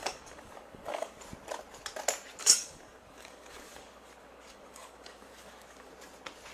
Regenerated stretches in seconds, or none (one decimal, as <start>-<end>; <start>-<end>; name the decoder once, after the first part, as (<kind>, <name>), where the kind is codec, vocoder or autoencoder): 0.0-1.2 (codec, DAC); 2.4-5.9